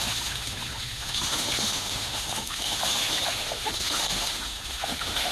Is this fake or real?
fake